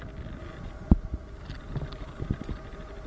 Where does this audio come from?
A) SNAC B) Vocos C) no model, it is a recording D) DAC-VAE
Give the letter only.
C